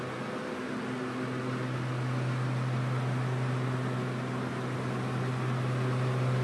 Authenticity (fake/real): real